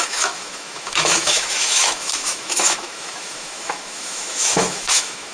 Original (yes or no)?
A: no